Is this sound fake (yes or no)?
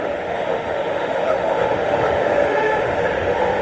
yes